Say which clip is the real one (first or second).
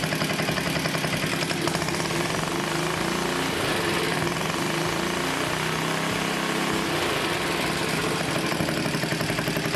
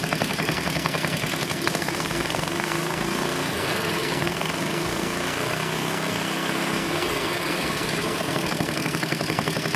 first